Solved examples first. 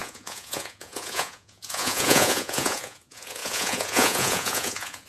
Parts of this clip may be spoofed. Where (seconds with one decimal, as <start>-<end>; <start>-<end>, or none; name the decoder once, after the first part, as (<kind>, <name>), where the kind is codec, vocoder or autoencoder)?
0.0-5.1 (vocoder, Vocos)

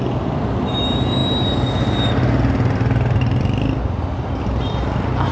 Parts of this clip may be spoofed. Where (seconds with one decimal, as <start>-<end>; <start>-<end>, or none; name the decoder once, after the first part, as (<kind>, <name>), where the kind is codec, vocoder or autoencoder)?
none

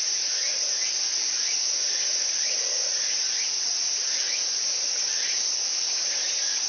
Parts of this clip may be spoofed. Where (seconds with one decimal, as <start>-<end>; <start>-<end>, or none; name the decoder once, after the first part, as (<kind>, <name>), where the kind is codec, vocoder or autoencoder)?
none

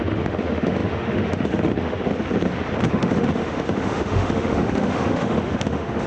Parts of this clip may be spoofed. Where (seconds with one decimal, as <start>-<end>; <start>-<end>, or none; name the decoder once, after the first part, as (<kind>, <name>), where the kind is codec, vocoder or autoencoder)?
0.0-2.1 (autoencoder, DAC-VAE); 2.9-6.1

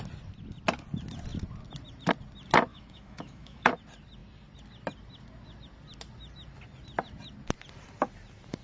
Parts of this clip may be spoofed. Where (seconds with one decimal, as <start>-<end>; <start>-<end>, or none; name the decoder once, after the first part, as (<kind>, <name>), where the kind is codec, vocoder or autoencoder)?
2.7-3.7 (autoencoder, DAC-VAE)